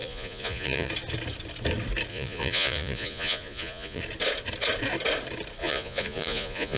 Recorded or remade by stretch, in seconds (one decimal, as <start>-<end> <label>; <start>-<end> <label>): 0.0-0.9 remade; 0.9-2.1 recorded; 2.1-4.0 remade; 4.0-5.6 recorded; 5.6-6.8 remade

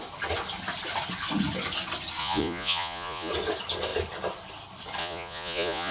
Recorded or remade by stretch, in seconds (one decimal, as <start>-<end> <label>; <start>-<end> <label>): 0.0-2.2 recorded; 2.2-3.3 remade; 3.3-5.0 recorded; 5.0-5.9 remade

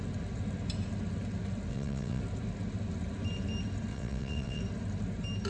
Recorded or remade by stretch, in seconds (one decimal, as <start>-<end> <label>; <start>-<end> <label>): 0.0-1.7 recorded; 1.7-2.2 remade; 2.2-3.9 recorded; 3.9-4.6 remade; 4.6-5.5 recorded

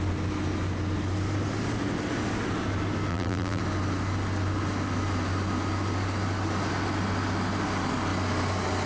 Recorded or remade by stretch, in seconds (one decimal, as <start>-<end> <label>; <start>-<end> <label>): 0.0-3.1 recorded; 3.1-3.6 remade; 3.6-8.9 recorded

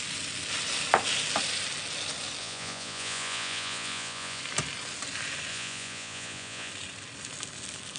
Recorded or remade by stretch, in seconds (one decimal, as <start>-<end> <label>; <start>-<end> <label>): 0.0-2.4 recorded; 2.4-4.4 remade; 4.4-5.5 recorded; 5.5-6.7 remade; 6.7-8.0 recorded